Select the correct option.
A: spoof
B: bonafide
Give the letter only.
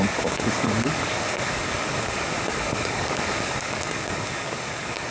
A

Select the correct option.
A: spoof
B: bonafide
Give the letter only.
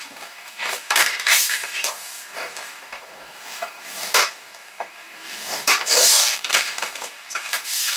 A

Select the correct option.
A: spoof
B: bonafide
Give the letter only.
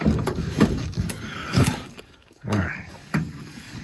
A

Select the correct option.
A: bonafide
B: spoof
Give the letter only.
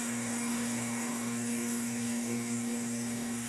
B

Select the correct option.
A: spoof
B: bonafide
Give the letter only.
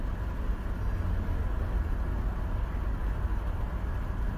B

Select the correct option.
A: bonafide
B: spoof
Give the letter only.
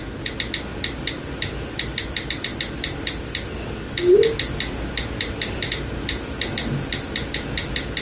A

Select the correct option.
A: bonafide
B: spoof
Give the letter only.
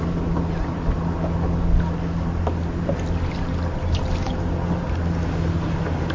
A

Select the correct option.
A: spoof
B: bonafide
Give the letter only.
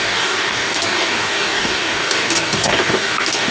A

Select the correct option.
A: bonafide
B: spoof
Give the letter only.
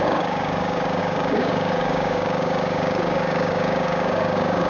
B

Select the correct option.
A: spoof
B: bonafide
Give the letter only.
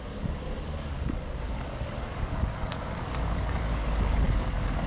A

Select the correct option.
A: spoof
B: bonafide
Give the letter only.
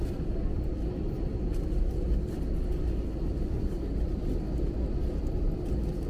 B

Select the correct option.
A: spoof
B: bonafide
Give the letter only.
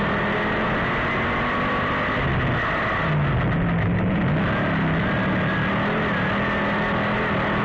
B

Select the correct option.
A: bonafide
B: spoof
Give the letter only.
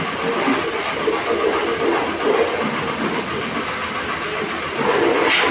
A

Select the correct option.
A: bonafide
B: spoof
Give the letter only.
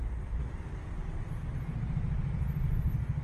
A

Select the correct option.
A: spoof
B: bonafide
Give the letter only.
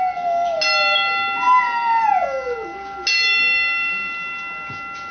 B